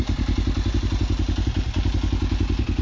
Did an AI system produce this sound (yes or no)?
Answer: no